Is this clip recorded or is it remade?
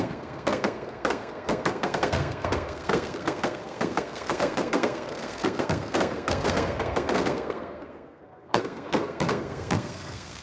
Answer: remade